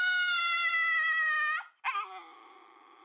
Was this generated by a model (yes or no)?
no